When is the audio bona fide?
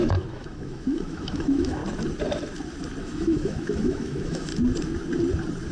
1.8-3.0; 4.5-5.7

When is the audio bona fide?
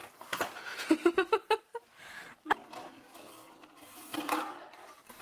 0.0-4.1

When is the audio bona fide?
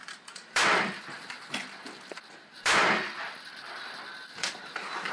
1.0-1.8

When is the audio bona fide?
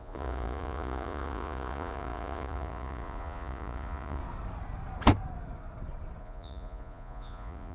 4.2-6.2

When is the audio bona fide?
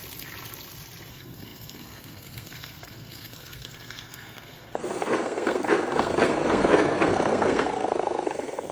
0.0-1.1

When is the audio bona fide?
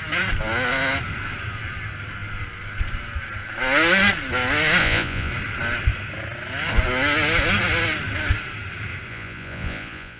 0.0-4.8; 5.3-9.1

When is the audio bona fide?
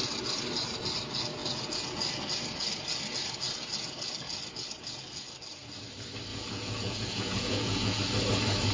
0.0-6.3; 8.0-8.7